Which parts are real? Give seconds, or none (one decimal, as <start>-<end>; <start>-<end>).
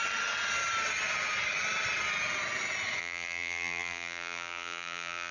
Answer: 0.0-3.0